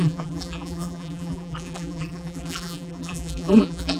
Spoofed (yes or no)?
yes